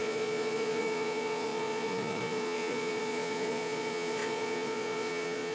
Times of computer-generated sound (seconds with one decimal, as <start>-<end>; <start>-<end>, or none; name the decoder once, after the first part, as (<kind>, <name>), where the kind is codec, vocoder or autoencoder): 0.0-5.5 (vocoder, Vocos)